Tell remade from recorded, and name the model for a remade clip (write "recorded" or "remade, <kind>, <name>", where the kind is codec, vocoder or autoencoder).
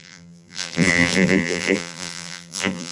remade, vocoder, BigVGAN v2